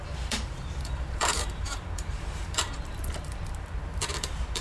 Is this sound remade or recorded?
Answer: remade